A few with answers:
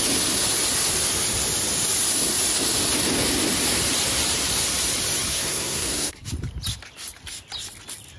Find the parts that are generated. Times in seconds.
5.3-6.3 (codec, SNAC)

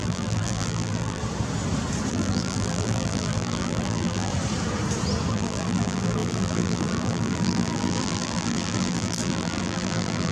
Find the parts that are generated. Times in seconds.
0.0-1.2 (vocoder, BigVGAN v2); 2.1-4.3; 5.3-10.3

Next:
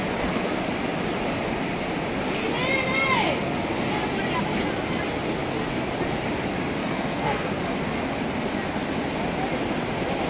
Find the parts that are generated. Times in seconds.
6.8-7.5 (codec, SNAC)